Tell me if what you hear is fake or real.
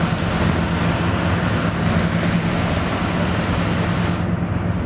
real